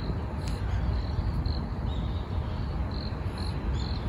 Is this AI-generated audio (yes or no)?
no